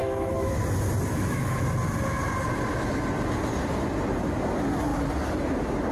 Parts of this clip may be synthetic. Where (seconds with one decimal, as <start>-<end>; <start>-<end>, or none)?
0.0-0.5; 1.1-1.6

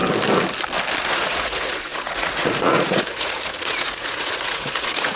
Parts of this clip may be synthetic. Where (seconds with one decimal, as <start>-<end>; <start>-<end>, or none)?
1.0-5.2

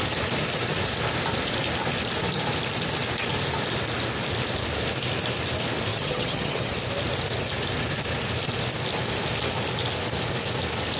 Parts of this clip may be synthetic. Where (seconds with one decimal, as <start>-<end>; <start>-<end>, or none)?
5.9-6.7

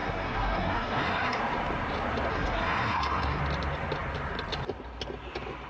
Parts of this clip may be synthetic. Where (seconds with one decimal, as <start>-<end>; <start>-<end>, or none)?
0.0-1.4; 2.3-3.4

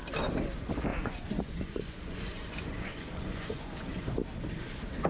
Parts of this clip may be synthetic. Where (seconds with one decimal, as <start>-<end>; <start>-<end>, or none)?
0.9-4.0

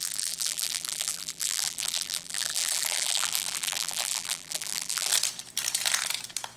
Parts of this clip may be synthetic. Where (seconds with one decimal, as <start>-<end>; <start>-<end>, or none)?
0.0-5.1